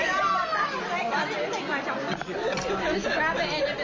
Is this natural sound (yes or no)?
yes